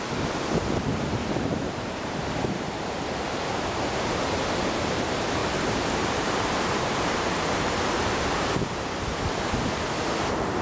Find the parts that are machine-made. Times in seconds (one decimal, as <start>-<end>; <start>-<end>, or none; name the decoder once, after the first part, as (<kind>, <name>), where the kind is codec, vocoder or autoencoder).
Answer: 1.2-4.2 (vocoder, BigVGAN v2); 5.4-8.3